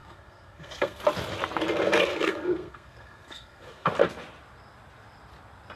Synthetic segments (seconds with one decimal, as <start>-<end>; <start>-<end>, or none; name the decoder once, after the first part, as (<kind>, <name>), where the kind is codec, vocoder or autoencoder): 0.0-1.0 (codec, SNAC); 2.1-3.9